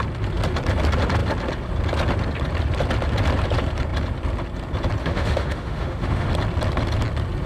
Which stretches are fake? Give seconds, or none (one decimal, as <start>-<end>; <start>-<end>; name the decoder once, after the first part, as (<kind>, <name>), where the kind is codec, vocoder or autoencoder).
5.0-6.3 (autoencoder, DAC-VAE)